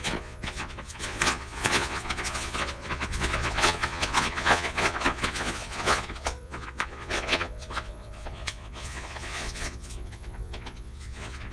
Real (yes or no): no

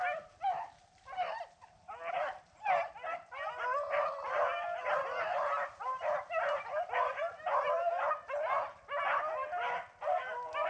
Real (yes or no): yes